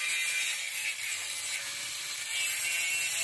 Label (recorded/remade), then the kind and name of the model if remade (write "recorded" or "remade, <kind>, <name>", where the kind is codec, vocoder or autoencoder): recorded